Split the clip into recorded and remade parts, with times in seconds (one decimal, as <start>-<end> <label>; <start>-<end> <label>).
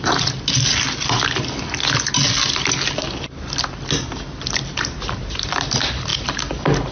0.0-6.9 recorded